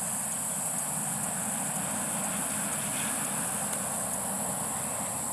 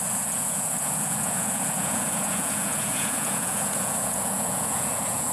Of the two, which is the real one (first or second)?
first